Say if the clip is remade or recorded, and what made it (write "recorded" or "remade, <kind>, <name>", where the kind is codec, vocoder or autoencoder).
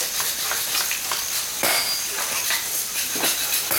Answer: recorded